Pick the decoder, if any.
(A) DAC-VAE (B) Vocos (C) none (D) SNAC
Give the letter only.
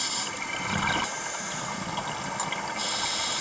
C